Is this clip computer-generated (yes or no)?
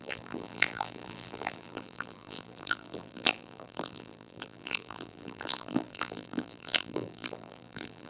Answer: yes